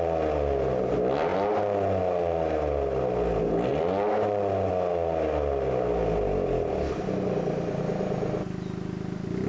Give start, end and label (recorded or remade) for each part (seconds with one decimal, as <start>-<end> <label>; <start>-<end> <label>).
0.0-9.5 recorded